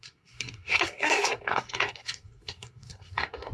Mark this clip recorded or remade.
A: remade